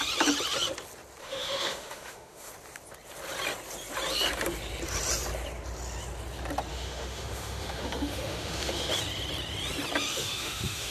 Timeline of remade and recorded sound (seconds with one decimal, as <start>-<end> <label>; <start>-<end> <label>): 0.0-1.2 recorded; 1.2-2.5 remade; 2.5-6.7 recorded; 6.7-8.9 remade; 8.9-10.1 recorded; 10.1-10.9 remade